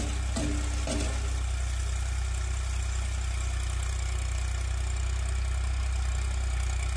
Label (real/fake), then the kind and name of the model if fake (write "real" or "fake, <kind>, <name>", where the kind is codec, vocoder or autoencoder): real